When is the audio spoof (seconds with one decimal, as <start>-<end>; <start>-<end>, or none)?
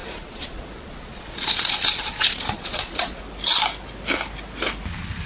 0.0-3.2